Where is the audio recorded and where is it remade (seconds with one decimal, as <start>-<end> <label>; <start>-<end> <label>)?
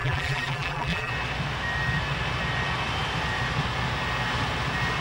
0.0-1.1 remade; 1.1-5.0 recorded